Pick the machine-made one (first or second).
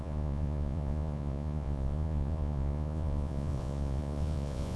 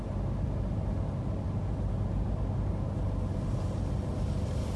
first